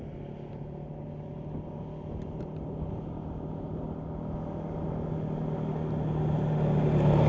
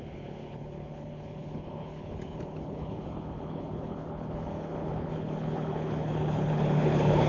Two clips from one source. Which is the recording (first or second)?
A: first